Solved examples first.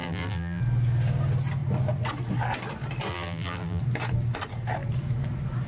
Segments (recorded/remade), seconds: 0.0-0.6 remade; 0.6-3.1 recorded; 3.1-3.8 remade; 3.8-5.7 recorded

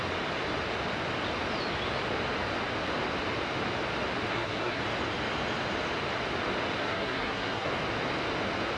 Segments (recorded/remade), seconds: 0.0-4.3 recorded; 4.3-4.8 remade; 4.8-6.8 recorded; 6.8-7.7 remade; 7.7-8.8 recorded

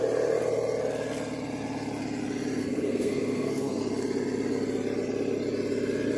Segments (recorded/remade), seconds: 0.0-2.6 recorded; 2.6-3.8 remade; 3.8-6.2 recorded